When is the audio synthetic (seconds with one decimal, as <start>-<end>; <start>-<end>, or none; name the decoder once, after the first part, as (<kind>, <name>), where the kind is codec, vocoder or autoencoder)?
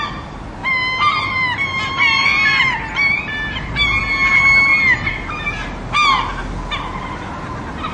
none